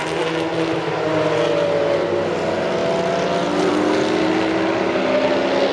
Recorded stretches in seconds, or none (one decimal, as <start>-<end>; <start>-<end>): 0.0-5.7